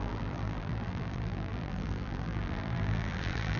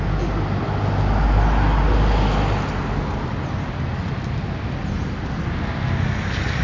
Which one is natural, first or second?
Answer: second